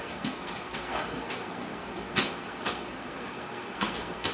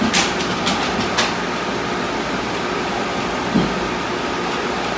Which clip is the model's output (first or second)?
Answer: first